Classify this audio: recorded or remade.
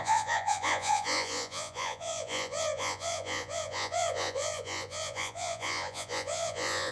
remade